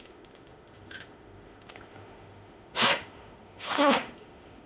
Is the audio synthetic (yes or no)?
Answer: yes